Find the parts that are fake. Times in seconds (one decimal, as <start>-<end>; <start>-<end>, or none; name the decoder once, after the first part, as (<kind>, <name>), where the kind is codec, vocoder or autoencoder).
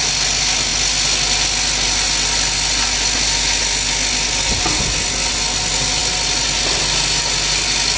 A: none